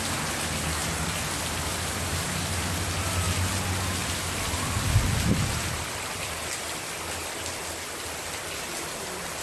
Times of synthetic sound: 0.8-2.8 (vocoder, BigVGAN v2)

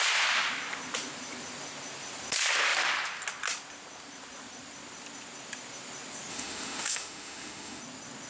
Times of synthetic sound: 6.3-7.8 (autoencoder, DAC-VAE)

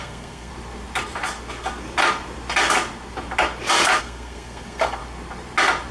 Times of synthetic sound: 0.0-0.5 (codec, SNAC); 4.0-5.0

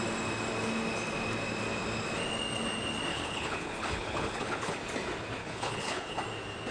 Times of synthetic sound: 3.1-4.8 (codec, HILCodec); 5.4-6.2